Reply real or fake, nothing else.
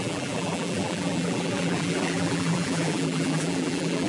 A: fake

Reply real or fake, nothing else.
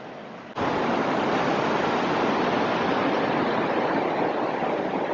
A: real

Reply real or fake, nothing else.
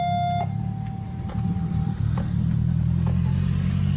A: real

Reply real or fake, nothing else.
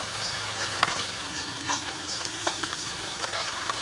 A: fake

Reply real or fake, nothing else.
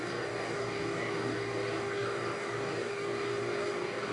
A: fake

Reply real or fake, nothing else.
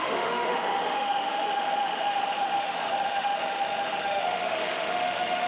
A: fake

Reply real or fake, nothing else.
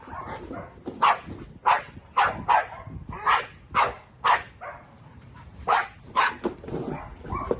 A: real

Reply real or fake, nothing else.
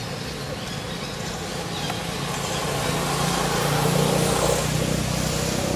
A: real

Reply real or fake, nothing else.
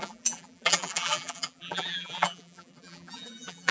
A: fake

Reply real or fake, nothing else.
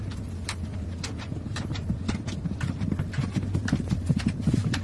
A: fake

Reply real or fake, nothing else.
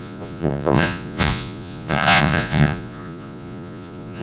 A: fake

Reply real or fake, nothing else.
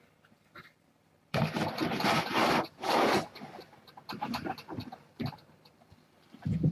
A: fake